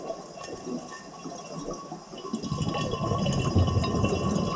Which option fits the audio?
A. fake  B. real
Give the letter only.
B